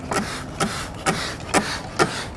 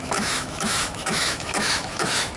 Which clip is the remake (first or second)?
second